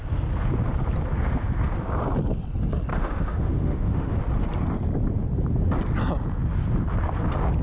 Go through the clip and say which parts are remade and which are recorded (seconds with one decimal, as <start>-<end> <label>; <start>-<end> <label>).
0.0-2.9 recorded; 2.9-4.2 remade; 4.2-7.6 recorded